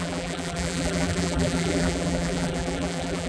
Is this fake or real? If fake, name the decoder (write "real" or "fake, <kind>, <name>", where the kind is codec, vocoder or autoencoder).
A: fake, vocoder, BigVGAN v2